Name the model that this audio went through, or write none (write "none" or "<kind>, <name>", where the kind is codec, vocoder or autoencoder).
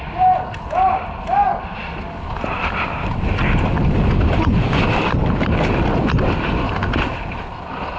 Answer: none